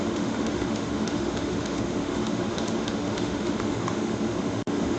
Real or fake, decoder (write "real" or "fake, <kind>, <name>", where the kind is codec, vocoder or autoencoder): fake, autoencoder, DAC-VAE